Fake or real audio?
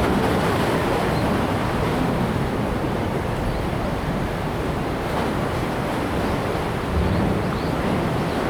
fake